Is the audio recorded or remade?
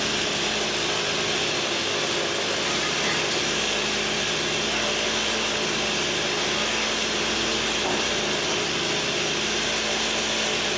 recorded